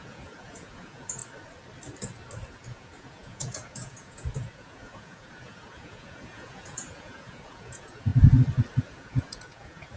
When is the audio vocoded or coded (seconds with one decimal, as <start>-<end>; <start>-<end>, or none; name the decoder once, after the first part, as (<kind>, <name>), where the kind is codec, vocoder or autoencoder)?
0.0-1.2 (vocoder, Vocos); 2.5-8.1; 8.8-10.0